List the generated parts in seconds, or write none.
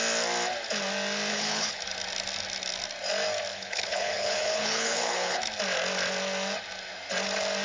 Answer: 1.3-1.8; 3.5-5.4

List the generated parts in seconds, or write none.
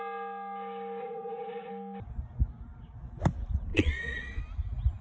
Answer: 1.0-1.7; 3.7-4.4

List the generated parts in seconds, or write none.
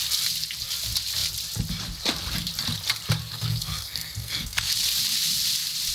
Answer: 3.2-4.7